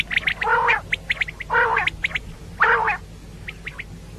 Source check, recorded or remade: recorded